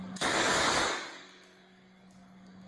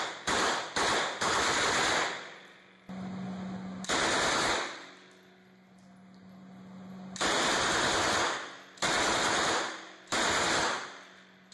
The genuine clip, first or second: second